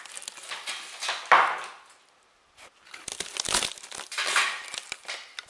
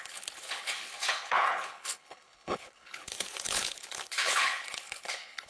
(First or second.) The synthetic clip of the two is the second